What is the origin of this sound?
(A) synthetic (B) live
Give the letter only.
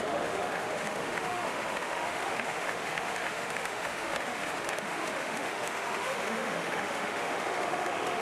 A